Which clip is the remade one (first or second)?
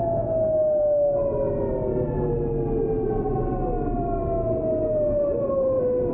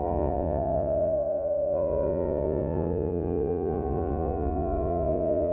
second